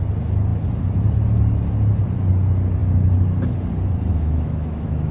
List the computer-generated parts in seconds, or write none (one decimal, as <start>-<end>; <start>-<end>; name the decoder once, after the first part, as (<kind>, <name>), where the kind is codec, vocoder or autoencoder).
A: 4.1-5.1 (autoencoder, DAC-VAE)